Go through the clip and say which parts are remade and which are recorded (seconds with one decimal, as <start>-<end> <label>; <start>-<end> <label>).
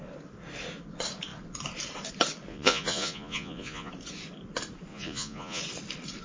0.0-2.5 recorded; 2.5-3.9 remade; 3.9-4.9 recorded; 4.9-5.6 remade; 5.6-6.2 recorded